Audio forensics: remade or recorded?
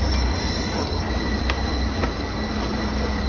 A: recorded